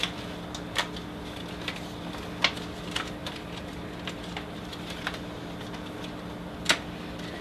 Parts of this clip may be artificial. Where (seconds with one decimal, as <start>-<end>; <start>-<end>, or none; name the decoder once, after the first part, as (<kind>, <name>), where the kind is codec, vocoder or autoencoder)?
3.2-4.7 (vocoder, BigVGAN v2)

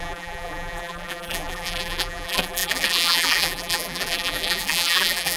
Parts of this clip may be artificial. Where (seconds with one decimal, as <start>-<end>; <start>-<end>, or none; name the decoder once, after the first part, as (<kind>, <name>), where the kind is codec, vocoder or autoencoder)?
0.0-5.4 (vocoder, BigVGAN v2)

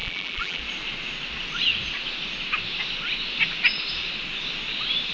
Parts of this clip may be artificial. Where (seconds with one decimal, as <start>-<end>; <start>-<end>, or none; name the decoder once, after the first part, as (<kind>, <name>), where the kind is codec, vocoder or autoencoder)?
0.0-0.6 (vocoder, BigVGAN v2)

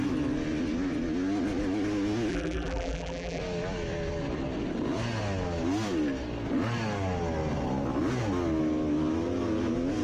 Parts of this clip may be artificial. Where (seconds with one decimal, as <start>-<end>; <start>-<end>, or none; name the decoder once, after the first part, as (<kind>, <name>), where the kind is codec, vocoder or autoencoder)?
2.3-3.4 (vocoder, BigVGAN v2)

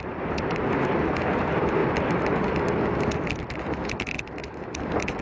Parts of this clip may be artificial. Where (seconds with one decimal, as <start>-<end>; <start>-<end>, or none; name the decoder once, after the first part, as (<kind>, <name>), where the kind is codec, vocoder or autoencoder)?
0.0-1.8 (vocoder, BigVGAN v2)

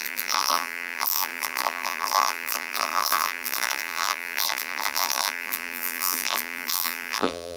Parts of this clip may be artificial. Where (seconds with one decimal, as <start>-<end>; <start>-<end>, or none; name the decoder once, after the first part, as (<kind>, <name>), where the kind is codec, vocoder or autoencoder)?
0.0-7.6 (vocoder, BigVGAN v2)